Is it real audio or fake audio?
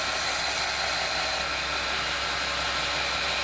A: real